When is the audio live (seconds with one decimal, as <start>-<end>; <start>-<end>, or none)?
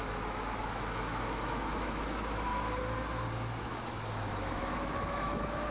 2.5-3.6